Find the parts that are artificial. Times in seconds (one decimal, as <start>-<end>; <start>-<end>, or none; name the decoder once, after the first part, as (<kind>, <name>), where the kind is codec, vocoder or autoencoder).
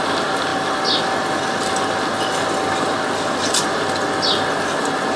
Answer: none